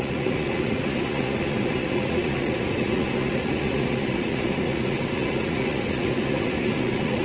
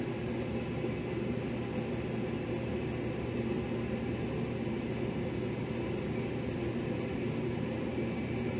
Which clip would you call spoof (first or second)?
first